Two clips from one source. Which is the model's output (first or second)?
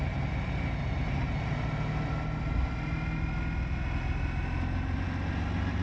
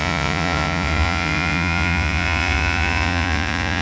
second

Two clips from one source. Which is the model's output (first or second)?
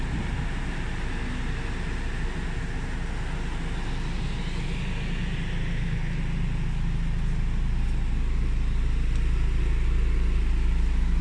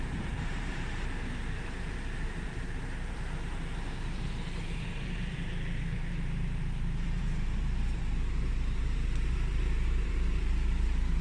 second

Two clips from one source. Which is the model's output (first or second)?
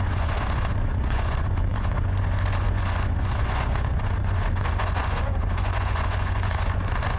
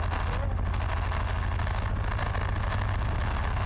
first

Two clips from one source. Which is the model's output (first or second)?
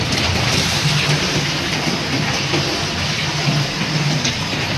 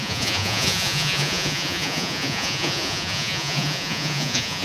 second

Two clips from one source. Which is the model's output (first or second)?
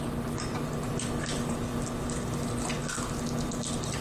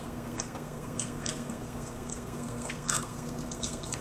second